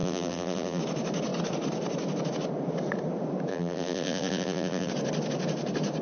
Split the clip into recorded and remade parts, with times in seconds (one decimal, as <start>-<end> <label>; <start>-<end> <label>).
0.0-0.8 remade; 0.8-3.5 recorded; 3.5-4.9 remade; 4.9-6.0 recorded